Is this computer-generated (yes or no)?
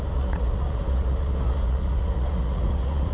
yes